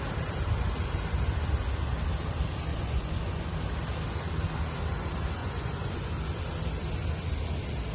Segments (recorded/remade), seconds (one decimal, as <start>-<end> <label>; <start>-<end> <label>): 0.0-2.7 recorded; 2.7-3.5 remade; 3.5-5.4 recorded; 5.4-6.1 remade; 6.1-7.9 recorded